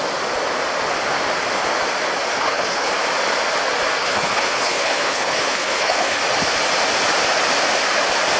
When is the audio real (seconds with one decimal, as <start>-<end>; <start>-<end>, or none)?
0.0-2.3; 2.9-4.0; 6.2-8.4